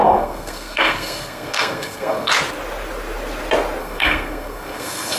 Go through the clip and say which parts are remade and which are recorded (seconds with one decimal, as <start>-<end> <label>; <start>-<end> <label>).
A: 0.0-2.3 remade; 2.3-3.8 recorded; 3.8-5.2 remade